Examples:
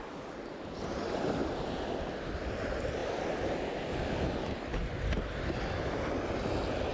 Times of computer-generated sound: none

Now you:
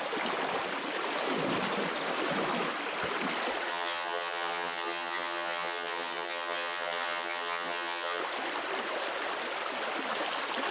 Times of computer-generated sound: 3.7-8.2 (vocoder, HiFi-GAN)

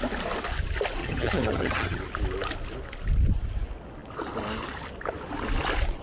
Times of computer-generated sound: 1.0-2.0 (vocoder, HiFi-GAN)

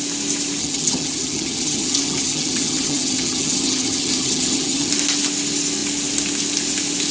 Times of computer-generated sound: 0.6-4.9 (vocoder, HiFi-GAN)

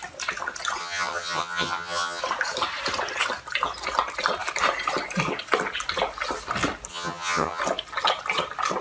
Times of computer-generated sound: 0.8-2.2 (vocoder, HiFi-GAN); 6.9-7.6

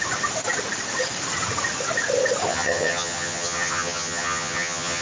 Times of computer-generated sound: 2.5-5.0 (vocoder, HiFi-GAN)

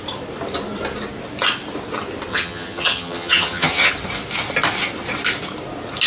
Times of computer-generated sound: 2.3-3.9 (vocoder, HiFi-GAN)